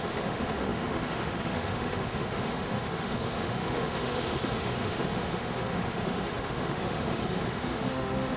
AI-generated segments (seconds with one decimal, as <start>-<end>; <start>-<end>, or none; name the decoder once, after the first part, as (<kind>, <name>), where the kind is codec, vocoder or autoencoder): 0.0-8.4 (autoencoder, DAC-VAE)